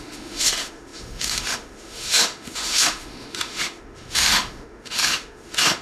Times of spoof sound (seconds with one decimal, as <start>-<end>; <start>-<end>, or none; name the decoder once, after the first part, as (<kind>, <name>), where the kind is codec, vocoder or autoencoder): 0.0-5.8 (autoencoder, DAC-VAE)